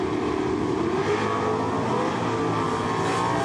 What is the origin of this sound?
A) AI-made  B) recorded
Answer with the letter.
B